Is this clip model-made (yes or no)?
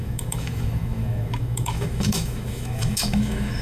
yes